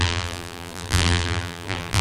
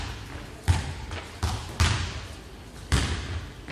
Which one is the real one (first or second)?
second